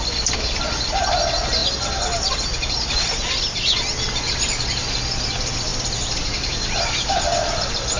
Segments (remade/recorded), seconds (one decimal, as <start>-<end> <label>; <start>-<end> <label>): 0.0-5.7 recorded; 5.7-7.1 remade; 7.1-8.0 recorded